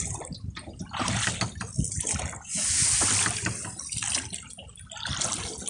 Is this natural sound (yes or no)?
yes